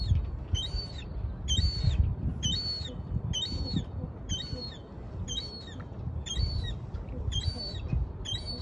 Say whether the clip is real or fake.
real